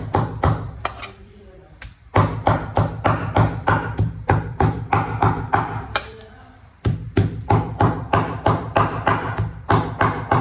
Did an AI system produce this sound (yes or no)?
yes